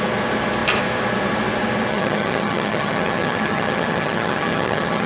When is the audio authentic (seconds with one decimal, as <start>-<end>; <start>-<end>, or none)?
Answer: 0.0-1.9